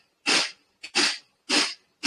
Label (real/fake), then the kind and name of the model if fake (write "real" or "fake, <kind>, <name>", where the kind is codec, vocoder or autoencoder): real